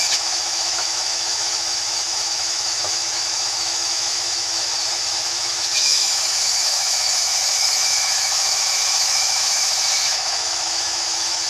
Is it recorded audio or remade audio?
remade